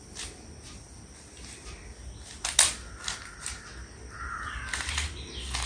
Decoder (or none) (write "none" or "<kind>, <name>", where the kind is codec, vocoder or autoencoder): none